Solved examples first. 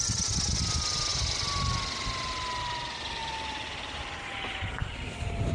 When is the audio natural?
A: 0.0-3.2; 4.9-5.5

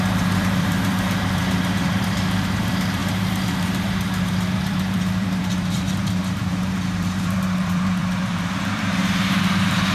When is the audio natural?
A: none

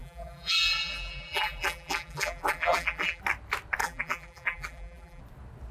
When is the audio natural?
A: 3.2-3.8; 5.2-5.7